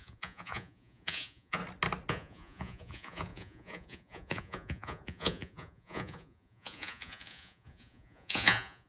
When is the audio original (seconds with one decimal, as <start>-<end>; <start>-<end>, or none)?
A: 1.6-2.1